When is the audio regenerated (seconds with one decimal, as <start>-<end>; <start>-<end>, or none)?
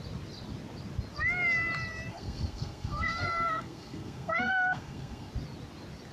2.1-5.3